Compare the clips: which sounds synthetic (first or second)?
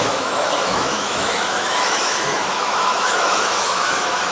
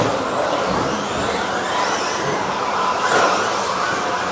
first